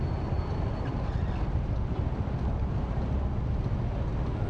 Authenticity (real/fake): real